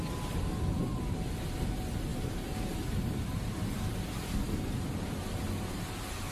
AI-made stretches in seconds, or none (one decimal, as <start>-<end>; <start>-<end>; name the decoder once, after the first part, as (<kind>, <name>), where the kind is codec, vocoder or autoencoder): none